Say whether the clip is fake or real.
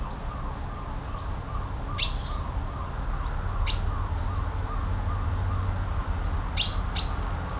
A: real